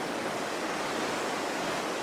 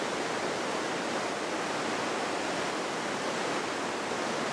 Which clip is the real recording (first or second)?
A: second